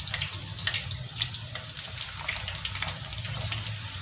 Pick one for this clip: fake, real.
real